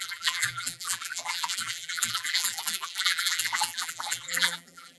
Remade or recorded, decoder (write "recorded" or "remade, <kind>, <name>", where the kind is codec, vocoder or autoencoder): remade, vocoder, BigVGAN v2